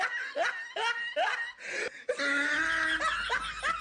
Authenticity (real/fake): real